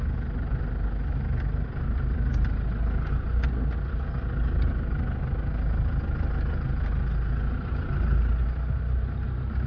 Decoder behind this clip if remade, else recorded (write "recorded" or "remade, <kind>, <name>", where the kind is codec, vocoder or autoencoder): recorded